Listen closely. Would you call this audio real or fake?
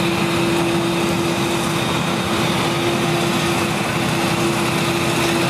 real